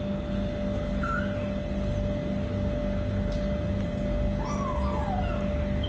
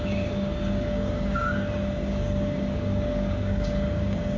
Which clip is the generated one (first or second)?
second